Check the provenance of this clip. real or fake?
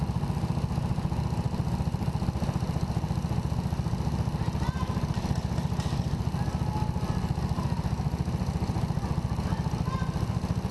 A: real